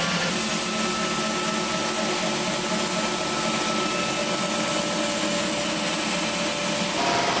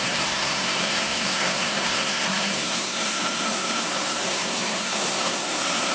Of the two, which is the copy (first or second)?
second